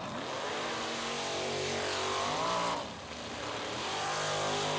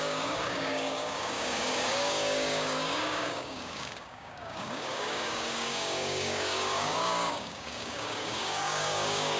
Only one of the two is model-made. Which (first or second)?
second